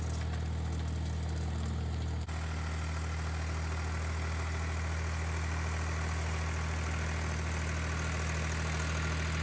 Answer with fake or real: real